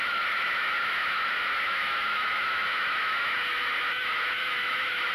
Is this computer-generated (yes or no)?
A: yes